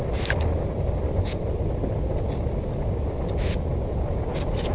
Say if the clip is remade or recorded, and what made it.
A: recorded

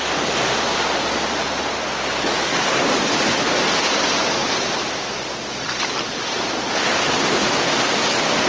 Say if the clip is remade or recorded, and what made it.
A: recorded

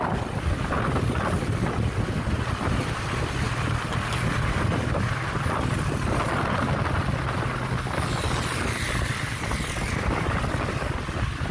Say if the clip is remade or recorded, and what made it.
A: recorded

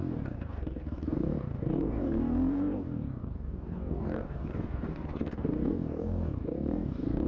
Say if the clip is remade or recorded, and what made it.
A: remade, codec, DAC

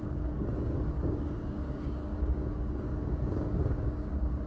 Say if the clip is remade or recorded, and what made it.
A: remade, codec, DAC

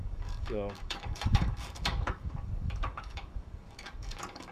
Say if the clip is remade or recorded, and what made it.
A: remade, codec, DAC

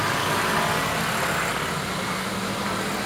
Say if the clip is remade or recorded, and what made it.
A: recorded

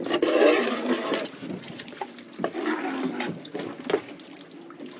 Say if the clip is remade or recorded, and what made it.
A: recorded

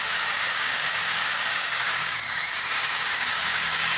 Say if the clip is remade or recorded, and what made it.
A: remade, codec, DAC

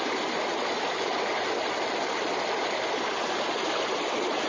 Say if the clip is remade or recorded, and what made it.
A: recorded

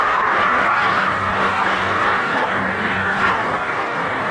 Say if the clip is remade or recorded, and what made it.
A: remade, codec, DAC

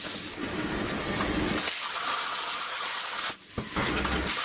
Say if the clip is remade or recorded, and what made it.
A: recorded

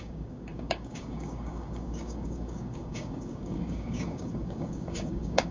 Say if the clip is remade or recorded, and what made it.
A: remade, codec, DAC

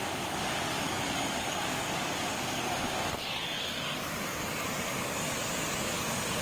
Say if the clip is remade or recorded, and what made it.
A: remade, codec, DAC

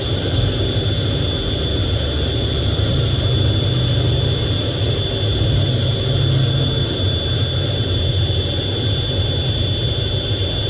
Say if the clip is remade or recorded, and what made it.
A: recorded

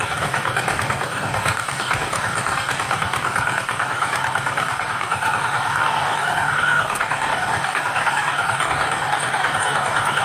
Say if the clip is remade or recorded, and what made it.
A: remade, codec, DAC